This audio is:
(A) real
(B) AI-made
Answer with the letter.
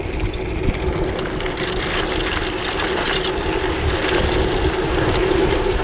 A